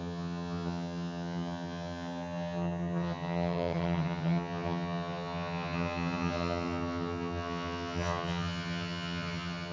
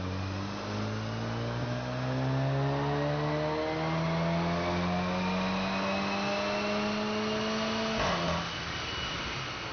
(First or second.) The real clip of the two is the second